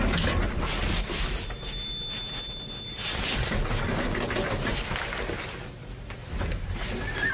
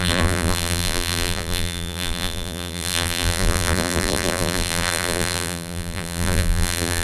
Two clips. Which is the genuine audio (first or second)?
first